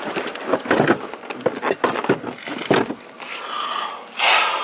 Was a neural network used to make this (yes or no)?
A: no